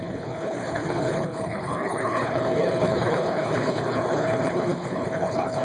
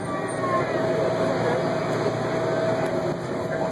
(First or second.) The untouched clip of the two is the second